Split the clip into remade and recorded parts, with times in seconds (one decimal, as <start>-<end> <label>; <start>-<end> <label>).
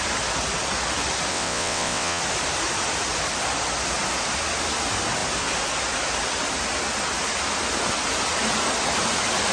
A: 0.0-1.3 recorded; 1.3-2.2 remade; 2.2-9.5 recorded